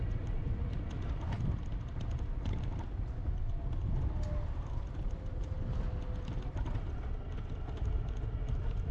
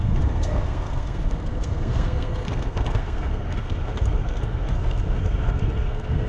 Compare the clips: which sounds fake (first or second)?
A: second